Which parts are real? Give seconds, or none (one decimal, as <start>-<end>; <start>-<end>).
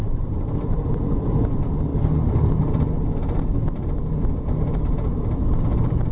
1.9-4.8